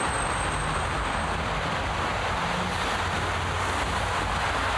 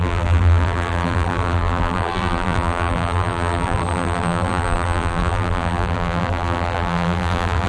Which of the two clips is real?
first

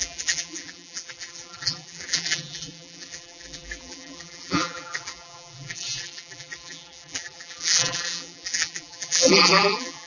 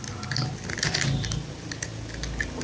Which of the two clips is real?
second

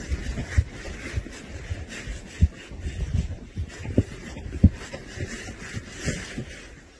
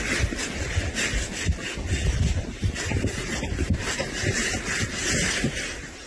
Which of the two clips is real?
first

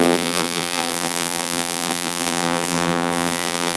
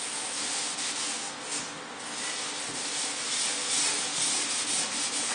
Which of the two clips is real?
second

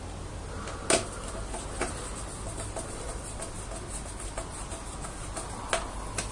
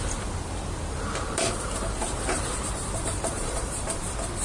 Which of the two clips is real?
first